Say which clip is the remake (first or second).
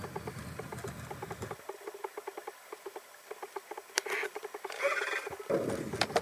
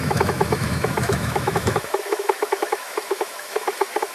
second